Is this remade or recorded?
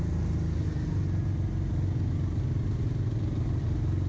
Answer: recorded